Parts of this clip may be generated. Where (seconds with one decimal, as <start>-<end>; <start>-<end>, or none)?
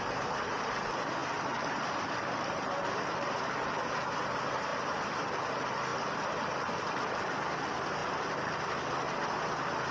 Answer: 1.2-3.8; 5.9-6.4; 8.0-8.7